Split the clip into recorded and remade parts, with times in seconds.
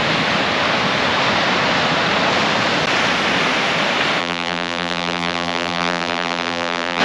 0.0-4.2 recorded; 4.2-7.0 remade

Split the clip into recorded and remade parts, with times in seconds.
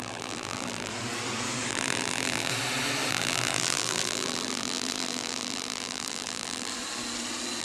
0.0-0.9 remade; 0.9-1.7 recorded; 1.7-2.5 remade; 2.5-3.1 recorded; 3.1-6.7 remade; 6.7-7.6 recorded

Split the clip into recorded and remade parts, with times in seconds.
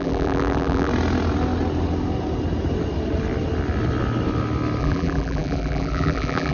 0.0-0.9 remade; 0.9-4.8 recorded; 4.8-6.5 remade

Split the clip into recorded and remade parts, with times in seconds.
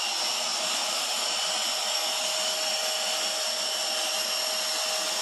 0.0-0.5 recorded; 0.5-1.1 remade; 1.1-5.2 recorded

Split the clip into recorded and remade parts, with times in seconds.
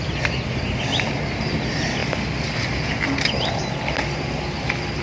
0.0-5.0 recorded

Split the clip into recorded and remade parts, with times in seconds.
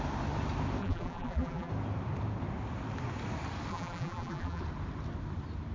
0.0-0.8 recorded; 0.8-1.7 remade; 1.7-3.7 recorded; 3.7-4.6 remade; 4.6-5.7 recorded